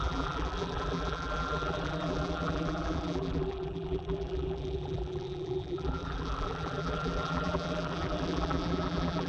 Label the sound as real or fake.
fake